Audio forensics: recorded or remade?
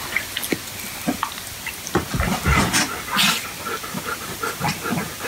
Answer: recorded